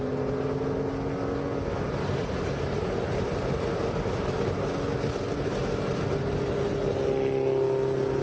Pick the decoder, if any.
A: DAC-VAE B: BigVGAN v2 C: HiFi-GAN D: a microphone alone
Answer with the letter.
D